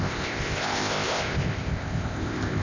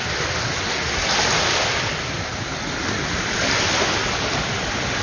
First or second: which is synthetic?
first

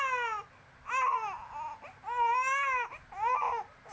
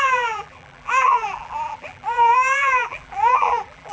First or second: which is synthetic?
second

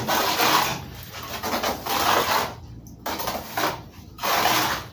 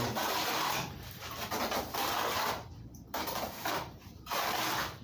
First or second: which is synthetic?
second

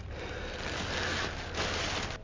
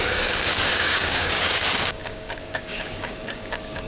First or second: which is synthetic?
second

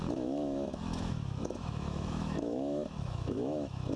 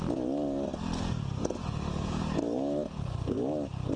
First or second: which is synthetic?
first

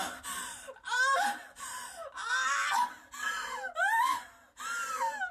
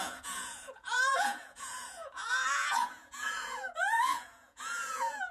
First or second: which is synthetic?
second